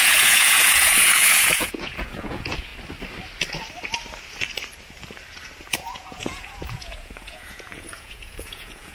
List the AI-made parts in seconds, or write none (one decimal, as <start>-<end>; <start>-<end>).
0.0-2.7; 5.7-8.9